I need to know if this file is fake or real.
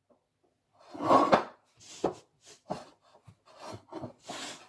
real